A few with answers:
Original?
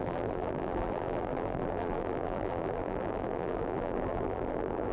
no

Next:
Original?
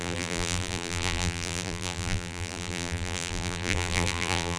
no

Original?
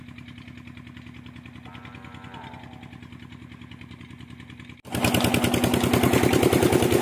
yes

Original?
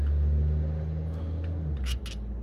yes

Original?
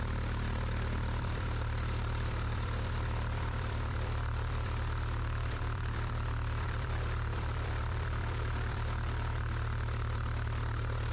no